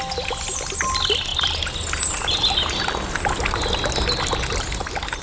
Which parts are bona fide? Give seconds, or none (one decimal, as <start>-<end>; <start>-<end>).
0.0-5.2